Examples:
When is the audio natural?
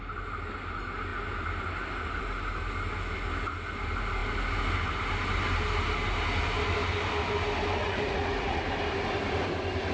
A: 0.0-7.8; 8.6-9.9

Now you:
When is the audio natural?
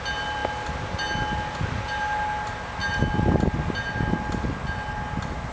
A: 0.0-5.5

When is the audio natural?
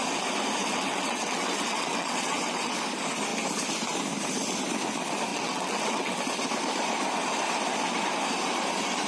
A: 0.0-0.6; 2.8-5.3; 6.2-9.1